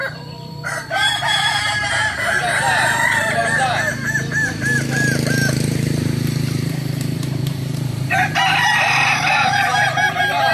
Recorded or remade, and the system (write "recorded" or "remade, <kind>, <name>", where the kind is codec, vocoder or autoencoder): remade, vocoder, BigVGAN v2